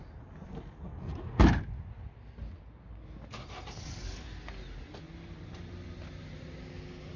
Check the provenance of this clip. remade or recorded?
recorded